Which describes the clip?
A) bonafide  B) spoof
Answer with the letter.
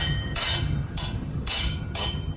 B